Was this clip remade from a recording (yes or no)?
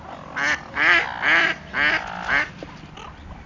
no